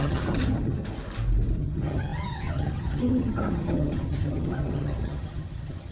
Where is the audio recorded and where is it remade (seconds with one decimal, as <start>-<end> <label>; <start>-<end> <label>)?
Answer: 0.0-0.8 remade; 0.8-1.6 recorded; 1.6-5.9 remade